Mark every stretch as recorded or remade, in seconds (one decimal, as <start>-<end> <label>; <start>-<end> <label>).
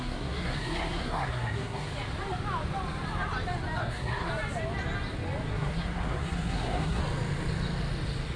0.0-1.9 remade; 1.9-3.8 recorded; 3.8-4.3 remade; 4.3-5.5 recorded; 5.5-7.0 remade; 7.0-8.4 recorded